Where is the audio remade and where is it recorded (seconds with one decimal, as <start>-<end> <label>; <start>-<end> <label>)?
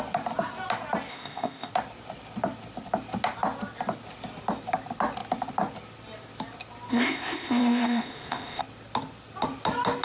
0.0-1.1 recorded; 1.1-1.7 remade; 1.7-6.9 recorded; 6.9-8.6 remade; 8.6-10.0 recorded